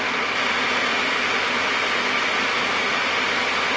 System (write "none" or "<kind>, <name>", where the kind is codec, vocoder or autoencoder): none